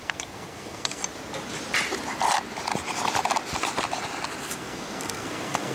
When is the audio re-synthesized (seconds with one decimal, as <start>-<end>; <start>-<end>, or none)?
0.0-1.0; 4.4-5.7